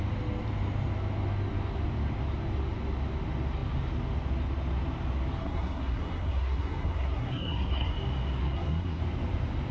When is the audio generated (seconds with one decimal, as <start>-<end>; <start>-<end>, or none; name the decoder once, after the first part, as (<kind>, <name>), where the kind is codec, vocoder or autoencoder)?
5.4-7.9 (codec, SNAC); 8.4-9.0